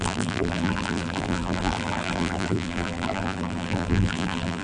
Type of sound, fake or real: fake